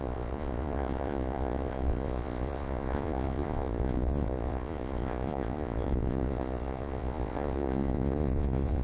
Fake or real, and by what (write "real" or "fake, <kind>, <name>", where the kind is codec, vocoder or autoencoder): fake, vocoder, Vocos